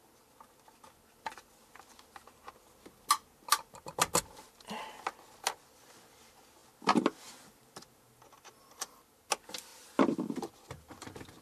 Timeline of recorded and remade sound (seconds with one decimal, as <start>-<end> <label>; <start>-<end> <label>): 0.0-11.4 recorded